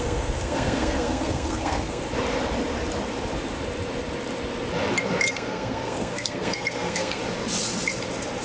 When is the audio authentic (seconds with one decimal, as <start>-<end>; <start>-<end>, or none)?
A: 2.0-5.3; 7.2-8.4